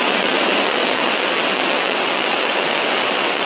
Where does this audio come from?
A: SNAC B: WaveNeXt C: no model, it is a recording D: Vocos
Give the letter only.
B